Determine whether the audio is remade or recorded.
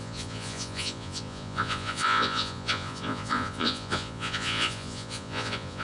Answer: remade